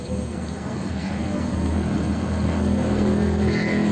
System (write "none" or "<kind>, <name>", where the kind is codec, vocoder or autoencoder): codec, SNAC